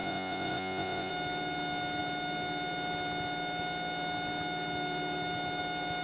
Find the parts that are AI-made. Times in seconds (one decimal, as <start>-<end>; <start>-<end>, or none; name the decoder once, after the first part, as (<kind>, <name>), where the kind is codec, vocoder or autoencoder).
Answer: 0.0-1.1 (vocoder, Vocos)